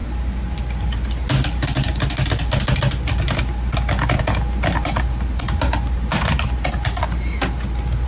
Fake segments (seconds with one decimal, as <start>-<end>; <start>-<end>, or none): none